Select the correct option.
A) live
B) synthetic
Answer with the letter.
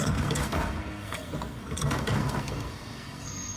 B